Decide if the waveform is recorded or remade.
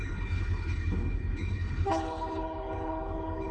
remade